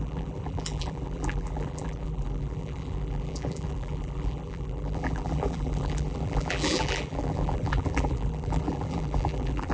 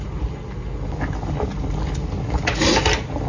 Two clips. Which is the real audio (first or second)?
second